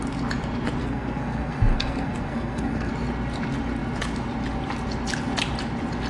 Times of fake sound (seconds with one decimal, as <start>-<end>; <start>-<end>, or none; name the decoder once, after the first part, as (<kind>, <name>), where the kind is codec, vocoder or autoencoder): 0.8-2.9 (codec, SNAC)